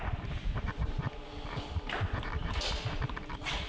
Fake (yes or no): no